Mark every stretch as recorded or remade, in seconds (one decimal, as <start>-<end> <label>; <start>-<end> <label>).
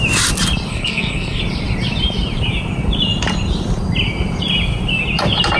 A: 0.0-0.7 recorded; 0.7-1.4 remade; 1.4-5.6 recorded